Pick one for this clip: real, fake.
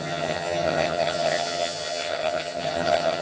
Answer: fake